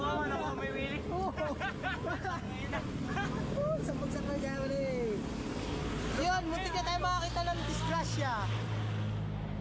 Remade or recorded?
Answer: recorded